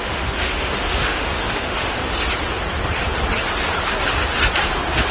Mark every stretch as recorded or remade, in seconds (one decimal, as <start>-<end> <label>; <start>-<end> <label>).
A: 0.0-2.0 remade; 2.0-5.1 recorded